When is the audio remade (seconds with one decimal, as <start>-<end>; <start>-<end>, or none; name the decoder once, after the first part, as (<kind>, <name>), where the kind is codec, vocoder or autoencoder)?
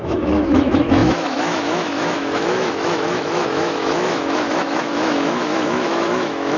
0.0-6.6 (autoencoder, DAC-VAE)